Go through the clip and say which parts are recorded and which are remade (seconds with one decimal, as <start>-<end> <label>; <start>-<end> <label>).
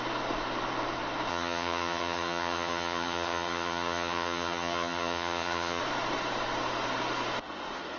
0.0-1.3 recorded; 1.3-5.8 remade; 5.8-8.0 recorded